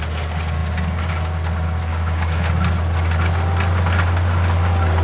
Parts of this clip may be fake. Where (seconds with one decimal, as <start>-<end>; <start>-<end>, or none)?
1.9-2.5